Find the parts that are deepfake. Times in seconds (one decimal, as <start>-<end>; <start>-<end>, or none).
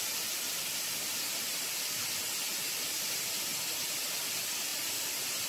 none